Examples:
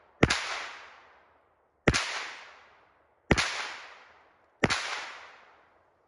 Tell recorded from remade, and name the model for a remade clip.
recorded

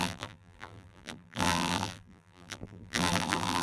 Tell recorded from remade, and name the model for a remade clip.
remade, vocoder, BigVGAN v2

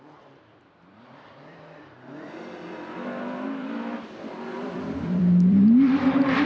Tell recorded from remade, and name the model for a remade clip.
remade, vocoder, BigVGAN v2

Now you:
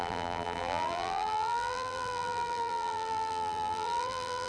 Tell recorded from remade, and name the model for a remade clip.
remade, vocoder, BigVGAN v2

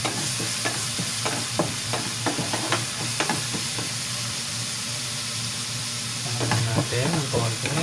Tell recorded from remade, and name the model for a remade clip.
remade, vocoder, BigVGAN v2